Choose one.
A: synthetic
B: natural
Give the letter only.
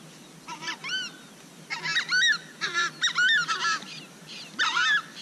B